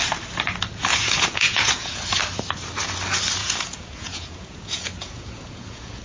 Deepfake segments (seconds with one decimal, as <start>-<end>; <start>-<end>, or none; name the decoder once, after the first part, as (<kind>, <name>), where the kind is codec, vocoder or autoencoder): 0.9-2.0 (vocoder, Vocos); 3.4-6.0